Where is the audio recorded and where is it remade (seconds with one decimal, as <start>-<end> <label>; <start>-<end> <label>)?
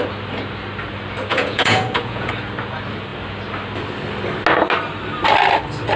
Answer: 0.0-1.3 recorded; 1.3-2.3 remade; 2.3-6.0 recorded